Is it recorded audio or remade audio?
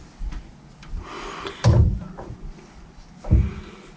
recorded